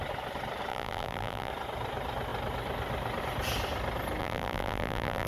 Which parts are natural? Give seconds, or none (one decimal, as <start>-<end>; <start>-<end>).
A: 0.0-0.7; 1.5-4.2